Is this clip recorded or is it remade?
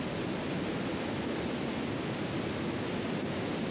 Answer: recorded